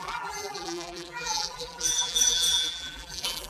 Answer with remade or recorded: remade